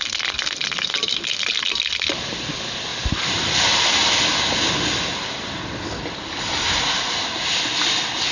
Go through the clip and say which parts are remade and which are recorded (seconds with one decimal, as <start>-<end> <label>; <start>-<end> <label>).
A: 0.0-2.9 recorded; 2.9-3.7 remade; 3.7-8.3 recorded